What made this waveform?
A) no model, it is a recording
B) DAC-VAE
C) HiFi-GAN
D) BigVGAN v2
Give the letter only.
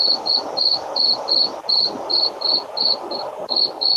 A